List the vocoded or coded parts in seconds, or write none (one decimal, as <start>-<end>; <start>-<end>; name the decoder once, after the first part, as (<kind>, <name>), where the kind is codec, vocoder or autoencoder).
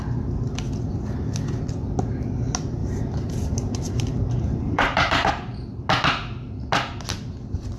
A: 2.8-5.9 (vocoder, BigVGAN v2)